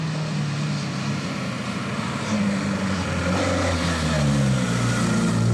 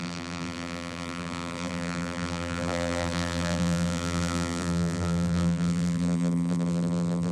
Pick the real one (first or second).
first